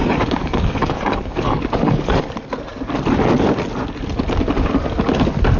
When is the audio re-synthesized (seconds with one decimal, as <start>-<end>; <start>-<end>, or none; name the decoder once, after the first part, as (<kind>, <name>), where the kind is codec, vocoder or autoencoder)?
0.0-2.2 (codec, DAC)